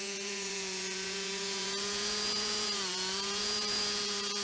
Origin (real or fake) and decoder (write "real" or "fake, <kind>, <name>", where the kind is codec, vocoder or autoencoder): fake, vocoder, Vocos